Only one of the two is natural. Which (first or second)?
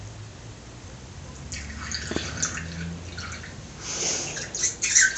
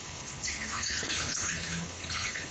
first